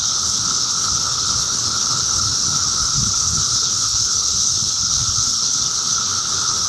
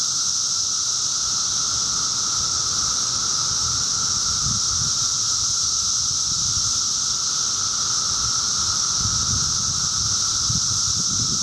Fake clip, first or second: first